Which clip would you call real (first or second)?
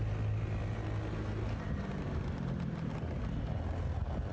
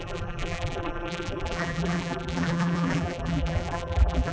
first